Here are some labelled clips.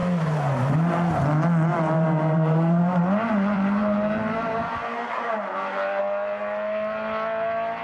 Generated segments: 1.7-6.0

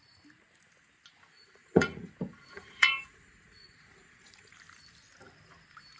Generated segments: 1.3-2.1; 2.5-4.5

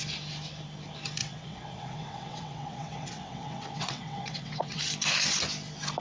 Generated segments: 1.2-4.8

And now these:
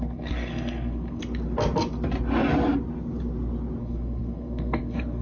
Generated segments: 0.0-1.2; 3.8-5.2

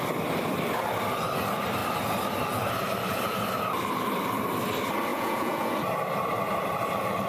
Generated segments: 5.1-5.7